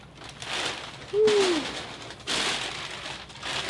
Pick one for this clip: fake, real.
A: real